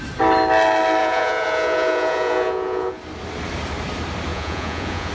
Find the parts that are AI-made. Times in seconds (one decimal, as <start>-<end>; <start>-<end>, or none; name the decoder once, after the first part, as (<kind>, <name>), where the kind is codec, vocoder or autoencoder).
1.0-3.0 (vocoder, Vocos); 4.3-5.1